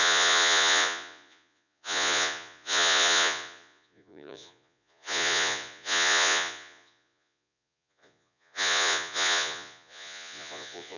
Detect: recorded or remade remade